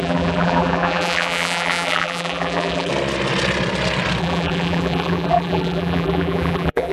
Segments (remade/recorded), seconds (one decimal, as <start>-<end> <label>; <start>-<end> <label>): 0.0-2.9 remade; 2.9-4.2 recorded; 4.2-6.9 remade